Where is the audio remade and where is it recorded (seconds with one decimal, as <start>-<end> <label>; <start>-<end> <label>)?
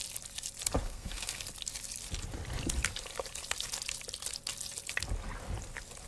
0.0-0.8 recorded; 0.8-1.4 remade; 1.4-6.1 recorded